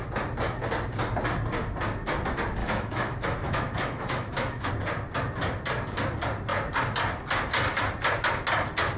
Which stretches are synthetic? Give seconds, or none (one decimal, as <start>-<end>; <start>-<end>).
2.6-4.7